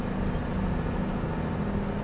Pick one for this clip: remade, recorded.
recorded